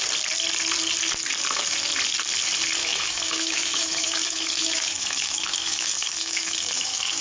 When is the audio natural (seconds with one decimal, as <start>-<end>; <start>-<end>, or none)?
0.0-2.8

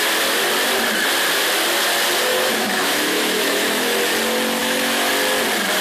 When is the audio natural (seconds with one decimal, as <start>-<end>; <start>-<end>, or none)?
0.0-2.3; 4.1-4.6; 5.1-5.8

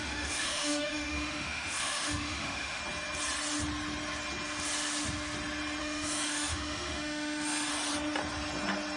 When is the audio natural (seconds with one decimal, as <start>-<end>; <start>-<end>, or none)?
2.8-5.8; 7.7-9.0

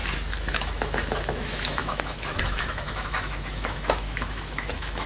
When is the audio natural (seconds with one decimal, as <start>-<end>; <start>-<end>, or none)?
0.0-0.5

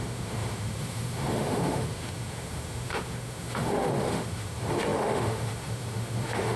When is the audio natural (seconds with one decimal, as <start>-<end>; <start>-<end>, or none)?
none

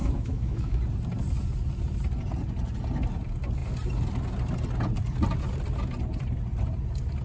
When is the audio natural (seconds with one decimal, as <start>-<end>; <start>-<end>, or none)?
0.8-7.2